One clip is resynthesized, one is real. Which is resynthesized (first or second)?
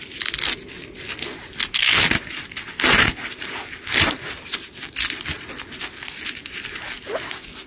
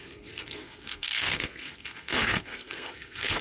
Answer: second